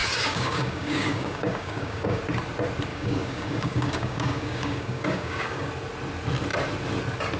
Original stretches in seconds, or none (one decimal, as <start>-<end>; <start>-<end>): 2.2-2.9; 5.7-7.4